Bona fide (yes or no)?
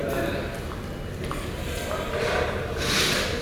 yes